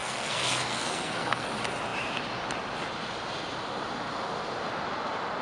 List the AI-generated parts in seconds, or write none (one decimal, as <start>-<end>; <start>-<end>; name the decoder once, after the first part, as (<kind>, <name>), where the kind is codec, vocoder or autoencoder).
0.0-1.5 (codec, SNAC)